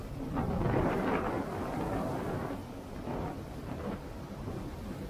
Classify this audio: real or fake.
real